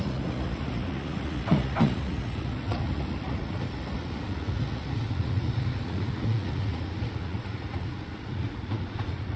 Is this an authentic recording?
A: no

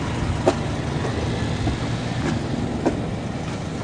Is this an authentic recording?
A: yes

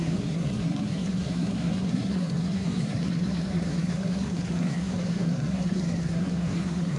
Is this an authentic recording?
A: no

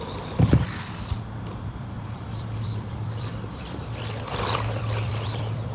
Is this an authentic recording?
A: no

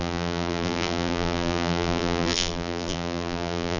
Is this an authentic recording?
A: no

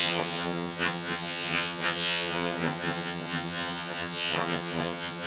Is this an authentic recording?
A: no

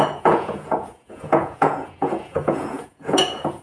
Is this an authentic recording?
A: no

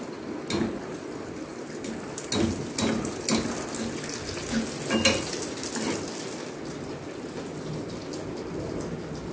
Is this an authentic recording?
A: yes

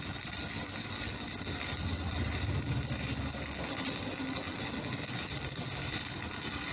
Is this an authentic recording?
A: yes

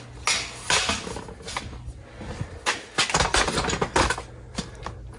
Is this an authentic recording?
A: yes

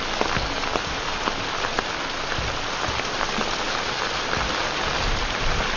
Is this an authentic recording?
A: yes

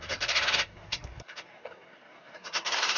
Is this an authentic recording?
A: no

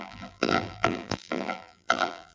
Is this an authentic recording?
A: no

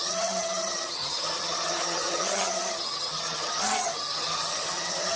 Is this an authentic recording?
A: no